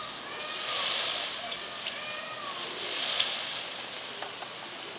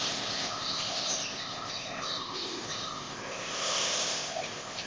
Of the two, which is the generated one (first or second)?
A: second